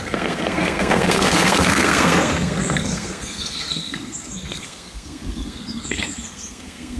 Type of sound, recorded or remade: remade